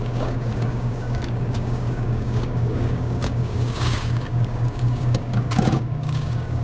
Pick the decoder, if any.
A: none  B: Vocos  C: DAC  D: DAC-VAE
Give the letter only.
C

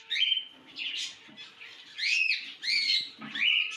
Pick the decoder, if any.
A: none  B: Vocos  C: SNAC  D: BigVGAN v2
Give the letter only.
A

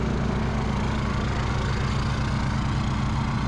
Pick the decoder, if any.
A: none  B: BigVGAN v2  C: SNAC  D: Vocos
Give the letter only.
A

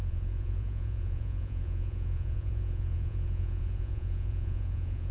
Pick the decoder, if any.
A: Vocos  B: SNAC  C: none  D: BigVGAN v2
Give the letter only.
A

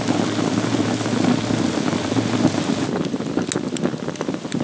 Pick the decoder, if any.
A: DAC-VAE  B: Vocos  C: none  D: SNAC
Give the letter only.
C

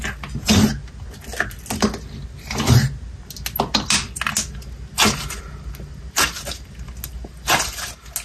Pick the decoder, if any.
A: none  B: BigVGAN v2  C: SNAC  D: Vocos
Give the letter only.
A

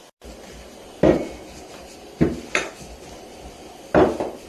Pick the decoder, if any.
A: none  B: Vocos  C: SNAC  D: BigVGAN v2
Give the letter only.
D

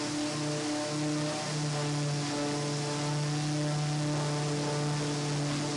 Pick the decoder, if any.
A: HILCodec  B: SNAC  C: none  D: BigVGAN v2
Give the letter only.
C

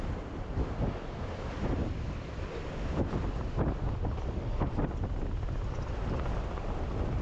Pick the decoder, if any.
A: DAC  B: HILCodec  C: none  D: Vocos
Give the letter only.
C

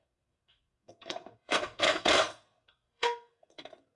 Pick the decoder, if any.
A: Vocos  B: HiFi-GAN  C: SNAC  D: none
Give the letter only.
C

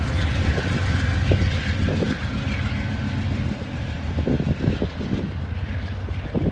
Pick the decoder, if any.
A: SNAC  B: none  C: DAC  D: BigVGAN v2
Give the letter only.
B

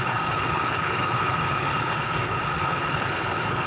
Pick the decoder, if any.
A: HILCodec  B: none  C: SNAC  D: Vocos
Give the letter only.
A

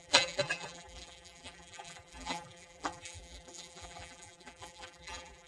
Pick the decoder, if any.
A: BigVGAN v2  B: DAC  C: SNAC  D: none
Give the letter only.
A